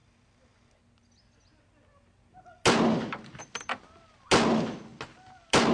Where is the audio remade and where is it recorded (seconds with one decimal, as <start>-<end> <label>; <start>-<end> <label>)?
0.0-5.7 recorded